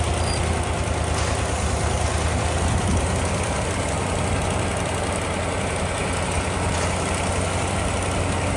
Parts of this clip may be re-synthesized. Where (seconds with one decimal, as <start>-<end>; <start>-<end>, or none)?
6.0-6.7